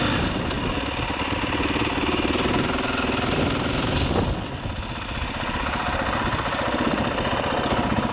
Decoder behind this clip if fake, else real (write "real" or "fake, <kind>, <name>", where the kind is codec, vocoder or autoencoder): real